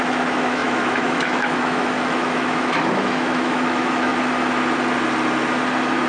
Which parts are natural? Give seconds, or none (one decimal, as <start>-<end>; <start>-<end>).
4.1-6.1